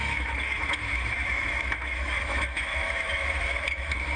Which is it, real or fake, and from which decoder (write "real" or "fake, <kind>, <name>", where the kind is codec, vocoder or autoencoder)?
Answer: fake, autoencoder, DAC-VAE